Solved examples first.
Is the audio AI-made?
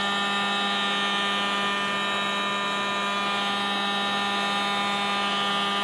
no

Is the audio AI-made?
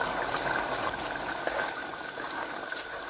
no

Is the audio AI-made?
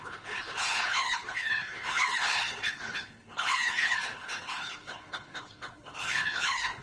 yes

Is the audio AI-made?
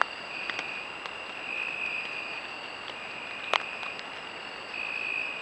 no